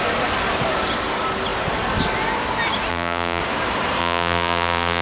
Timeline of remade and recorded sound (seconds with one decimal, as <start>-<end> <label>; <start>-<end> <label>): 0.0-2.9 recorded; 2.9-3.4 remade; 3.4-4.0 recorded; 4.0-5.0 remade